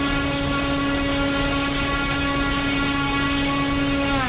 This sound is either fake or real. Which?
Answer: real